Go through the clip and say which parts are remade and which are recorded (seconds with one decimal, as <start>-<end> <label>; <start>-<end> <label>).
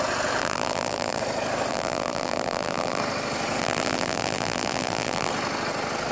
0.0-0.4 recorded; 0.4-1.2 remade; 1.2-1.7 recorded; 1.7-3.0 remade; 3.0-3.6 recorded; 3.6-5.3 remade; 5.3-6.1 recorded